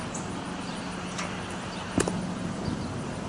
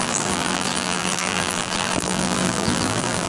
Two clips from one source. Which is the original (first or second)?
first